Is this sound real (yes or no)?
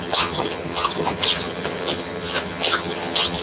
no